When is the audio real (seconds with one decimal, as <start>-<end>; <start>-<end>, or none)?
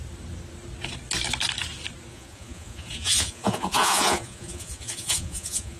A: 0.0-2.1